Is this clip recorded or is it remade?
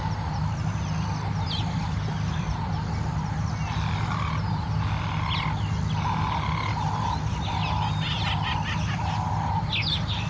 recorded